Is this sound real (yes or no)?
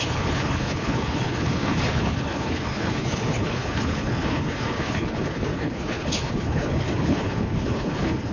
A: no